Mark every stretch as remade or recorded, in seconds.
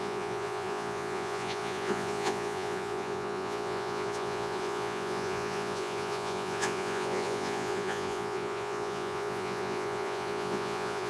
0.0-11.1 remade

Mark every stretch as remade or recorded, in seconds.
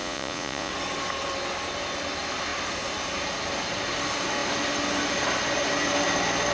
0.0-0.7 remade; 0.7-6.5 recorded